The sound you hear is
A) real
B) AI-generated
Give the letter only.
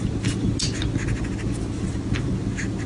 A